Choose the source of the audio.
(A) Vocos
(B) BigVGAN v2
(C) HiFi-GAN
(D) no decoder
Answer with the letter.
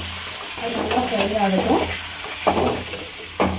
D